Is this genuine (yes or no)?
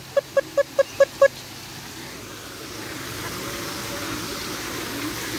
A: yes